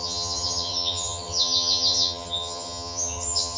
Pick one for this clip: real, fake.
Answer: fake